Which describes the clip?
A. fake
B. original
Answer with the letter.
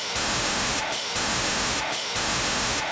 A